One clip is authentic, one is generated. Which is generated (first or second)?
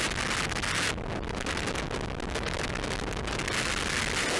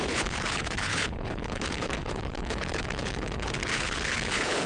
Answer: second